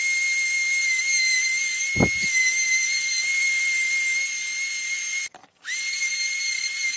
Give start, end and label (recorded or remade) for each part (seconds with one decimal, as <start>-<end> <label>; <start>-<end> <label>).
0.0-2.8 recorded; 2.8-3.9 remade; 3.9-7.0 recorded

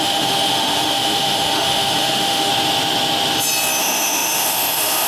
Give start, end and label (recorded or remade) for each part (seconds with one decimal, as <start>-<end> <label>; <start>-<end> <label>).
0.0-2.5 remade; 2.5-3.8 recorded; 3.8-5.1 remade